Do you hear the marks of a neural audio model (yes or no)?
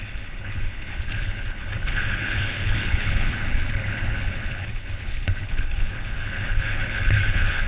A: yes